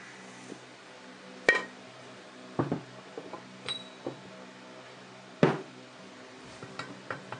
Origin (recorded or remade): recorded